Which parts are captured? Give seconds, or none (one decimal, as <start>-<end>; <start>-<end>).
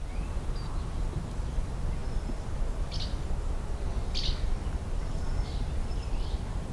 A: 0.0-6.7